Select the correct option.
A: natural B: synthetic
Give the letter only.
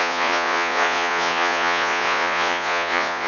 B